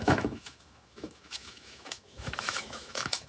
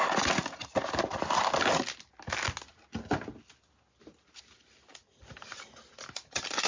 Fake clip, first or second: first